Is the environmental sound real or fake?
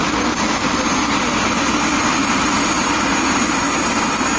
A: real